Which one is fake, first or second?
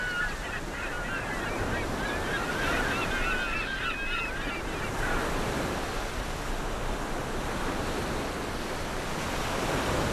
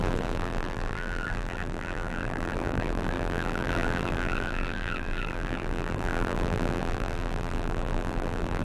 second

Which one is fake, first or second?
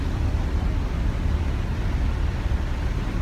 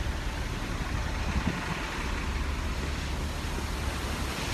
first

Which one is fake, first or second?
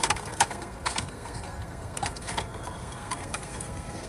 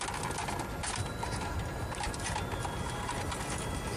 first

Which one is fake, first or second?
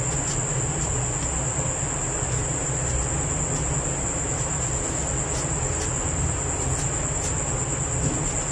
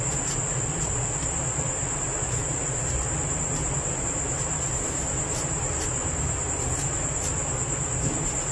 second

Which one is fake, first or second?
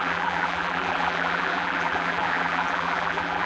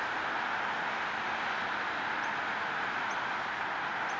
first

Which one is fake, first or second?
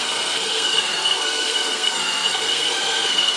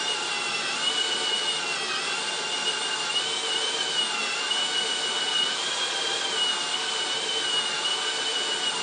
first